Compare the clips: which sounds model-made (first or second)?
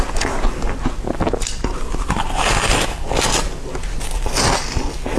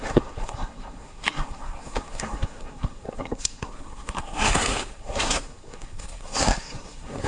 second